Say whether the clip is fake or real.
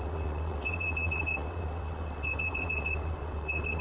fake